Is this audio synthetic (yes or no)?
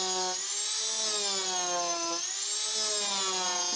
no